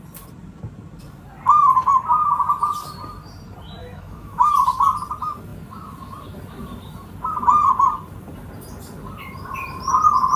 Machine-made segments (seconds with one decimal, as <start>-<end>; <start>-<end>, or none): 3.8-4.5